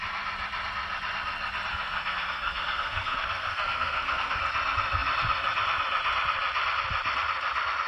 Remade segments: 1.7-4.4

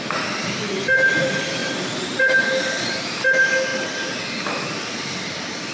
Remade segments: 1.6-2.9; 3.7-4.3

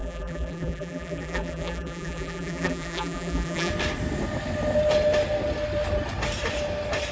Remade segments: 0.0-3.7

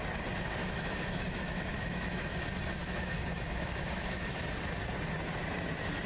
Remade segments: 0.6-2.4; 2.8-4.3

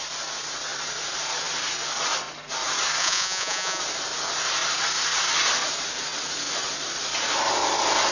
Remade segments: 3.0-3.8

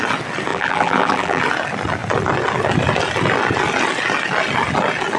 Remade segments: 0.5-1.4

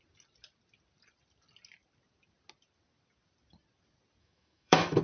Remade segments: 4.2-5.0